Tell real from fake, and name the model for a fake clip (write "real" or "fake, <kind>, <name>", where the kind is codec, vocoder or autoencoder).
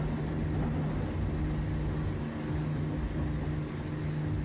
real